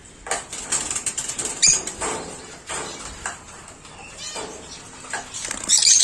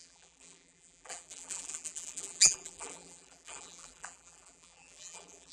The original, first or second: first